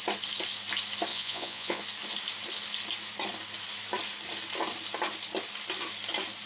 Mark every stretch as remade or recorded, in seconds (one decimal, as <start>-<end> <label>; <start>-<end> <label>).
0.0-1.1 recorded; 1.1-1.8 remade; 1.8-6.5 recorded